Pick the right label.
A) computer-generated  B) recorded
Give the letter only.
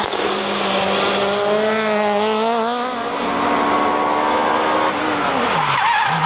B